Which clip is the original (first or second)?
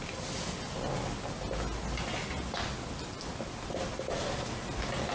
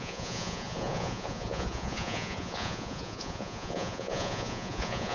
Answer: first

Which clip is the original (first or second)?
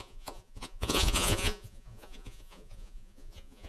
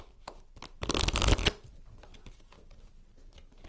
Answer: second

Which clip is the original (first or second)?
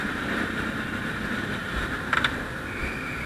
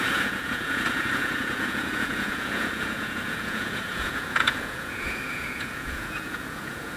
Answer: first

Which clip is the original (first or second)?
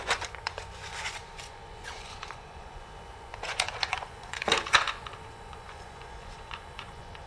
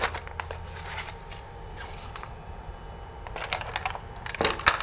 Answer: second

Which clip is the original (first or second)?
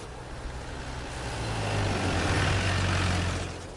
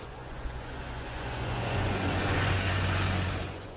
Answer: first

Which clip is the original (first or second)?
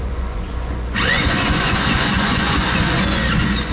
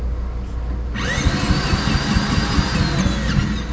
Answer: second